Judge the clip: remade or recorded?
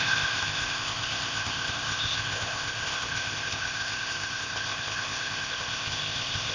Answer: remade